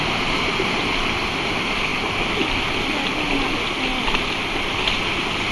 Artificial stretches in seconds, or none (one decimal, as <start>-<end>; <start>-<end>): none